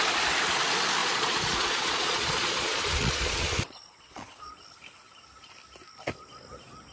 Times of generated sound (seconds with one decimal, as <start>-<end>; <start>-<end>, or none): 1.0-4.5